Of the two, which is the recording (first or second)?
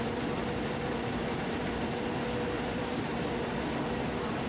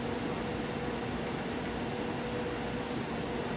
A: second